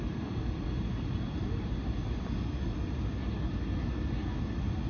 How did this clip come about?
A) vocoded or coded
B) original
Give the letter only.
B